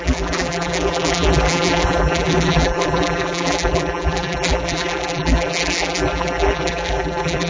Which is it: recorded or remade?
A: remade